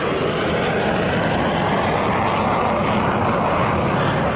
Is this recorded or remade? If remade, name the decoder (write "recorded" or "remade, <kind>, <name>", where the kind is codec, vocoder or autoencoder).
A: recorded